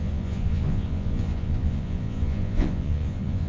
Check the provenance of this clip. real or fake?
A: fake